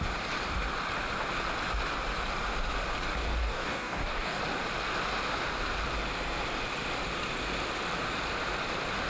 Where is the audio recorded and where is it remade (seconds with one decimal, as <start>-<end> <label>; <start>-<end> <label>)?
0.0-3.4 recorded; 3.4-4.4 remade; 4.4-9.1 recorded